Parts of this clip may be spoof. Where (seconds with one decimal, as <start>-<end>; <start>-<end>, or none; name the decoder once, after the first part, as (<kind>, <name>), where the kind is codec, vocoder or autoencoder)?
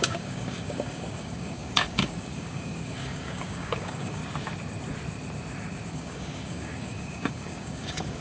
0.0-4.2 (codec, DAC); 5.9-8.2